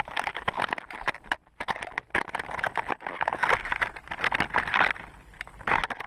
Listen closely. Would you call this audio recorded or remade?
recorded